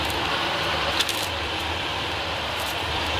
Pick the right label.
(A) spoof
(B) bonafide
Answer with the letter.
A